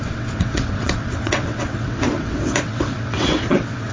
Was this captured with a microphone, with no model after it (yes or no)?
no